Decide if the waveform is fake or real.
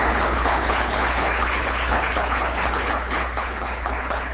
fake